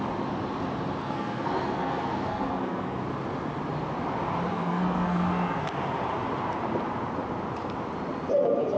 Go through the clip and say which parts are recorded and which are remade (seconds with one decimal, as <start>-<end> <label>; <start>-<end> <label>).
0.0-1.0 recorded; 1.0-3.0 remade; 3.0-4.5 recorded; 4.5-5.7 remade; 5.7-8.8 recorded